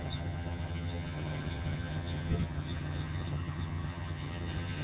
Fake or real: fake